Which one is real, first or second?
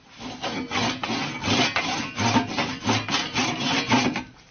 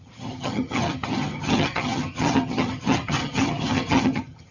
first